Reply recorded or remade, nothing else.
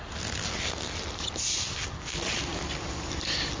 recorded